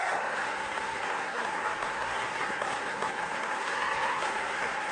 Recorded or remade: remade